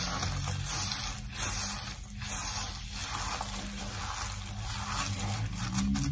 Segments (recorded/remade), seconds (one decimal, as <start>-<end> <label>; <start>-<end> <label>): 0.0-6.1 recorded